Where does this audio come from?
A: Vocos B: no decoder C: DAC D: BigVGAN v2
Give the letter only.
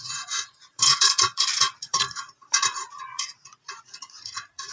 A